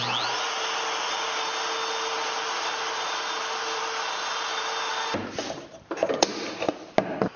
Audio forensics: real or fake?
real